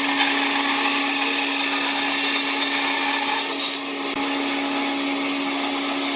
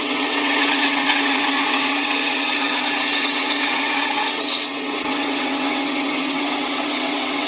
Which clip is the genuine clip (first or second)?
first